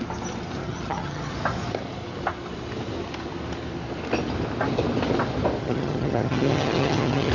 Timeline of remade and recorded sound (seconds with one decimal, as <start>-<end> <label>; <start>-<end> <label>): 0.0-0.6 recorded; 0.6-1.3 remade; 1.3-5.6 recorded; 5.6-7.3 remade